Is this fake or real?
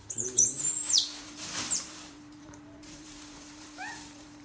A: fake